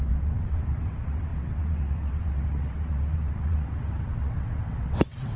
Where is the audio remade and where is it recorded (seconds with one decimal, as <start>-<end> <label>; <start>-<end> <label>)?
0.0-5.4 remade